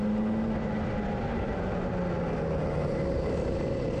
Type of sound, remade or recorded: recorded